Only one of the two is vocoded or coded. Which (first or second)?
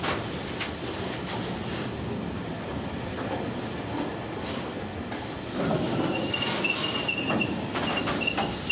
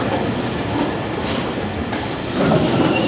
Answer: second